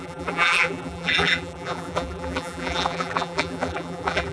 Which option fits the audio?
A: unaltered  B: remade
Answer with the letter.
B